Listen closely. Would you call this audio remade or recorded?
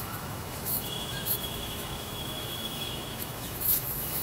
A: remade